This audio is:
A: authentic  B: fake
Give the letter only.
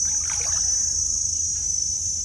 A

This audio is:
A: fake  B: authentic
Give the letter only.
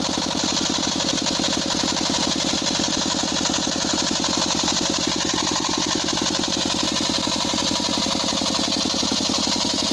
B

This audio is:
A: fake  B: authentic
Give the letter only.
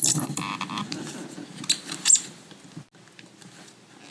B